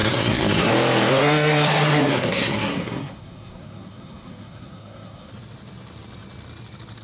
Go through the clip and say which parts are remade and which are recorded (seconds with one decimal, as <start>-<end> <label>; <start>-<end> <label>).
0.0-0.7 remade; 0.7-1.1 recorded; 1.1-5.3 remade; 5.3-7.0 recorded